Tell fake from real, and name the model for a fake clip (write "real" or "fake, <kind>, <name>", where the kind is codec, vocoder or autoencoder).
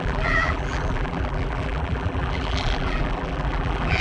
fake, vocoder, BigVGAN v2